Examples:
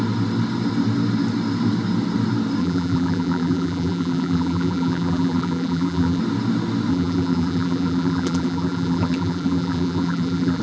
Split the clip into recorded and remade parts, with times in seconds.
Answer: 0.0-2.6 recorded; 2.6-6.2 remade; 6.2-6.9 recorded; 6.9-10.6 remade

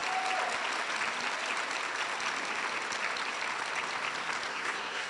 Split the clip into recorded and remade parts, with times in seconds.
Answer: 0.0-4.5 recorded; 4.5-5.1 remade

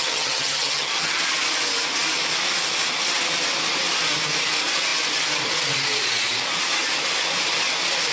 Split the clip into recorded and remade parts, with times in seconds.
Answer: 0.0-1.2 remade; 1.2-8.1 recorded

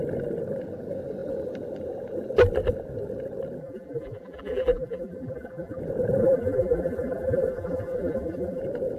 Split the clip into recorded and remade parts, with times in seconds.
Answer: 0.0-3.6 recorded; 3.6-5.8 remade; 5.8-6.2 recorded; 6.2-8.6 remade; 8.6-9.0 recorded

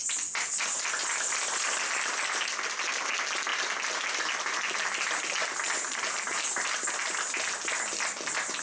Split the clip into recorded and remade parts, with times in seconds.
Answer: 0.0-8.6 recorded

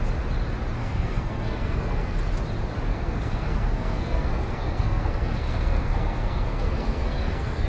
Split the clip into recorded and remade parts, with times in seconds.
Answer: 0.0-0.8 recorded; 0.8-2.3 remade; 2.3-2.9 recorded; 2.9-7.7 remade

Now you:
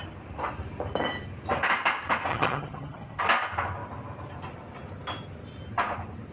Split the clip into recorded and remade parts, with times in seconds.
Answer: 0.0-2.3 recorded; 2.3-3.2 remade; 3.2-6.3 recorded